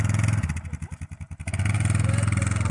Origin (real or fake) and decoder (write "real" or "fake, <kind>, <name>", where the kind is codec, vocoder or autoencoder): real